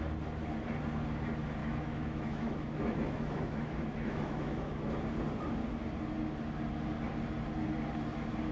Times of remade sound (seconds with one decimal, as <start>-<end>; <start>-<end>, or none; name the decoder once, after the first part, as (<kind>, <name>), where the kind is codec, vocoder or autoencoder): 1.6-4.9 (autoencoder, DAC-VAE)